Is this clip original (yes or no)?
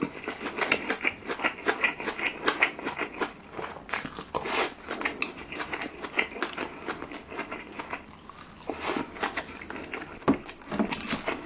yes